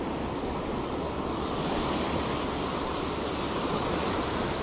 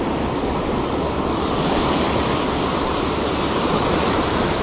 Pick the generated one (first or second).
second